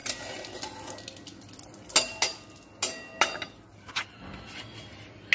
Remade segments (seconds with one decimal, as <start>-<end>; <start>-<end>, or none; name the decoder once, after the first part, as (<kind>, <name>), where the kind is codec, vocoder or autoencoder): none